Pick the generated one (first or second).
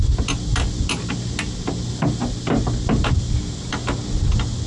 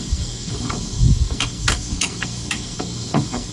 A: second